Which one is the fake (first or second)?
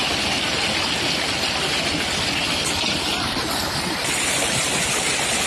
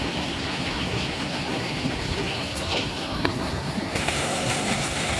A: second